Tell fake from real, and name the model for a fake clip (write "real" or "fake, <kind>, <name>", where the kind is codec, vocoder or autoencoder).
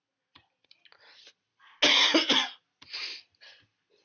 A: real